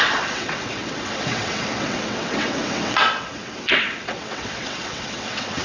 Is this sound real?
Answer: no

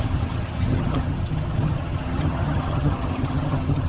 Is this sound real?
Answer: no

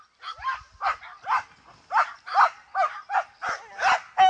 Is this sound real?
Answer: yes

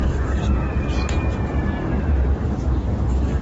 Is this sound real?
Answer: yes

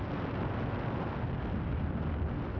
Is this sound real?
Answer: yes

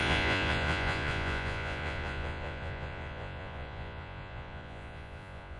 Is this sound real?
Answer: no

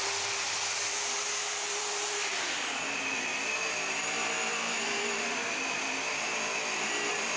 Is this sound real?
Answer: no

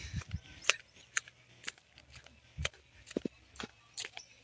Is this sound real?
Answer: yes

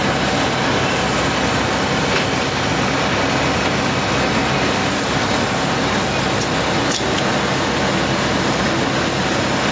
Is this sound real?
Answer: yes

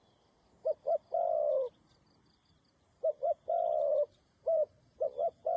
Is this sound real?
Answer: yes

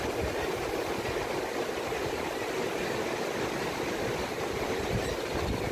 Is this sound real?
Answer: yes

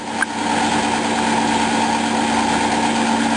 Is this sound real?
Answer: yes